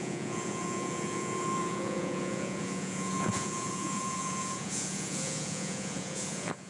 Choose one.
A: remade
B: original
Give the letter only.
A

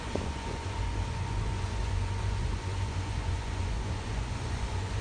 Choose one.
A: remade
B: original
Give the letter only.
A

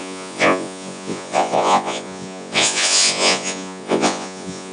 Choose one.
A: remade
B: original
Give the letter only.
A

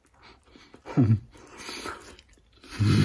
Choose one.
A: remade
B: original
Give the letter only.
B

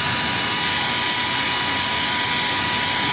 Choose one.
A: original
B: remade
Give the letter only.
A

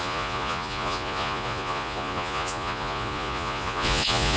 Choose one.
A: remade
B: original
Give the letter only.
A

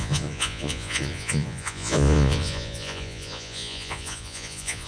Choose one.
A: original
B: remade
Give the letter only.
B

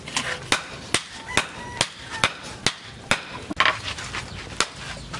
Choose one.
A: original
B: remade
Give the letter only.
A